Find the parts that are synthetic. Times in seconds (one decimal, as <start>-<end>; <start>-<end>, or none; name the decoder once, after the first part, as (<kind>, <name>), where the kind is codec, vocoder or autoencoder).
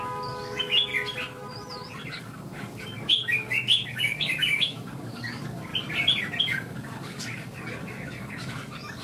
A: 0.0-0.9 (codec, DAC); 2.2-5.7; 6.4-9.0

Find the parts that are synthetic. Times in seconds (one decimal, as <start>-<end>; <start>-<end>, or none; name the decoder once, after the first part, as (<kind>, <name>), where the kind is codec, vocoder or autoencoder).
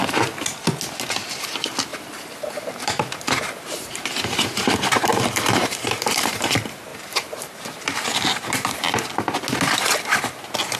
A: 1.9-6.5 (vocoder, BigVGAN v2); 6.9-8.8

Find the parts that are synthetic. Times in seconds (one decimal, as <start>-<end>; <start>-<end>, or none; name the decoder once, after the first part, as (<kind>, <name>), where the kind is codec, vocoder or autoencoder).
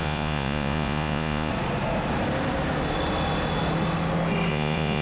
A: 0.0-1.5 (vocoder, Vocos); 4.5-5.0